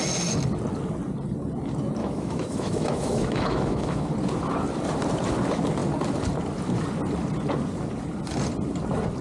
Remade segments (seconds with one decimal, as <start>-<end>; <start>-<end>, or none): 2.0-4.1